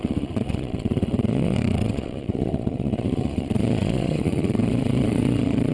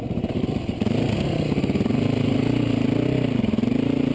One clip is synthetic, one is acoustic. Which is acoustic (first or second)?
second